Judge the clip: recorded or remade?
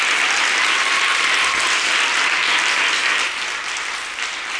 recorded